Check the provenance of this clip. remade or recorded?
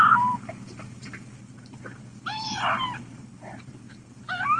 recorded